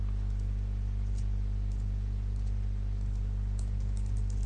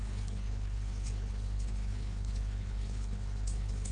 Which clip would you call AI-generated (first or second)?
second